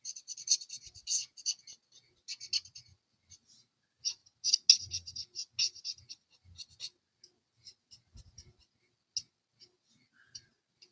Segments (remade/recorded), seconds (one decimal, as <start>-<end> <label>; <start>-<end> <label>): 0.0-10.9 recorded